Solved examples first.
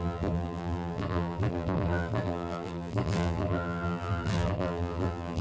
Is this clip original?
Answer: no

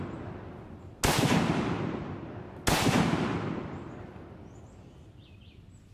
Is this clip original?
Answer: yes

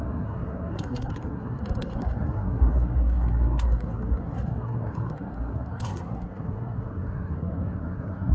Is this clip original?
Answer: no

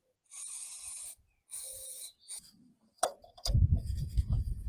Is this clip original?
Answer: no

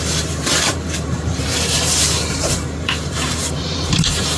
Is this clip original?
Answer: no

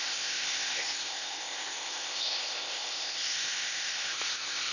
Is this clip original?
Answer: no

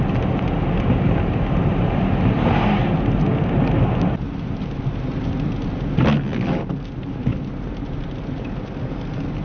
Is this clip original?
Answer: yes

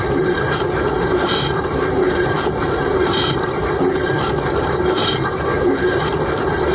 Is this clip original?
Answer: no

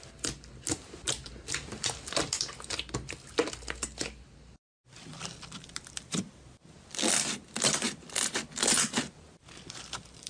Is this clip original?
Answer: yes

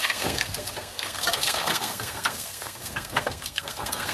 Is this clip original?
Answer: no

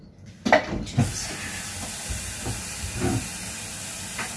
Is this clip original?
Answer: yes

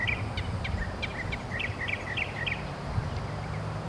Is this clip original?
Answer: yes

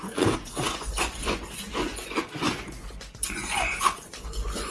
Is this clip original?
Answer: no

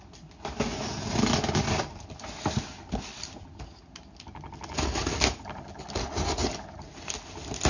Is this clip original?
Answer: yes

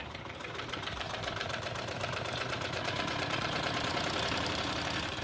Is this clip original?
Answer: no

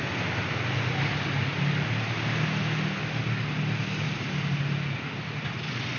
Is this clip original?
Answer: yes